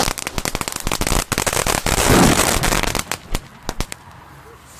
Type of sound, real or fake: real